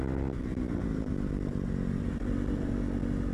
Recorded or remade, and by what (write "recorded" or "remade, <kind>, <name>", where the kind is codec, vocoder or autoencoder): recorded